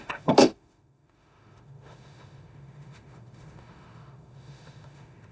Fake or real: fake